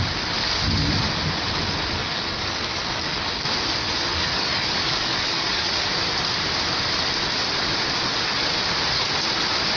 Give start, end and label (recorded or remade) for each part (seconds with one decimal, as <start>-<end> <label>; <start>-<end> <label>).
0.0-2.0 recorded; 2.0-3.2 remade; 3.2-4.1 recorded; 4.1-5.7 remade; 5.7-9.8 recorded